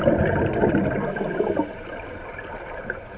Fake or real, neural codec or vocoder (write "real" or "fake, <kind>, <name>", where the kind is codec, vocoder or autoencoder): fake, vocoder, BigVGAN v2